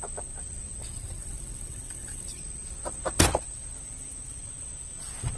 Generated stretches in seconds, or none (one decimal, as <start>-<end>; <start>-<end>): 0.8-2.4